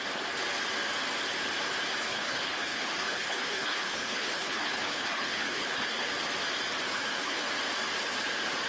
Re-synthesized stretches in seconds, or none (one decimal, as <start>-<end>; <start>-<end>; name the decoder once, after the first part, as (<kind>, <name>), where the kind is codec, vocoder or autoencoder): 2.1-6.1 (codec, HILCodec); 6.9-7.5